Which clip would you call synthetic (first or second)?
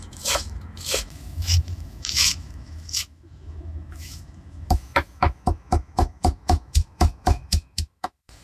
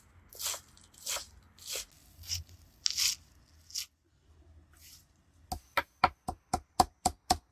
first